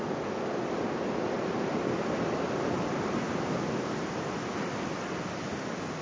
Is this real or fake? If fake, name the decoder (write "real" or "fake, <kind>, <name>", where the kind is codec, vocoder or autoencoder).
real